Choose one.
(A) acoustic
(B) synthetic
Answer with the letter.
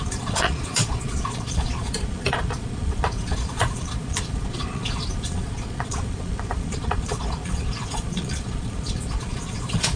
B